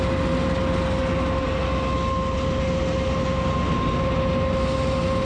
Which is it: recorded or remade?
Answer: recorded